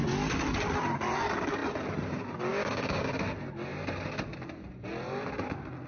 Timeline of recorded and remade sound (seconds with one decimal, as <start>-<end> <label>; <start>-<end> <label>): 0.0-2.5 recorded; 2.5-3.1 remade; 3.1-5.9 recorded